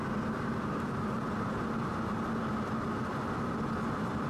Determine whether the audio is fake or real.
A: real